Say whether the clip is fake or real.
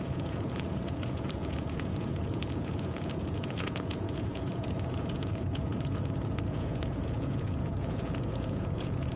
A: fake